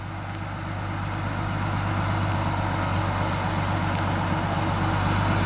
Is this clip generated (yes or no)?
no